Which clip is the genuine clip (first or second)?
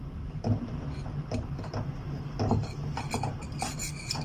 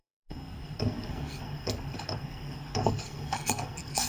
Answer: first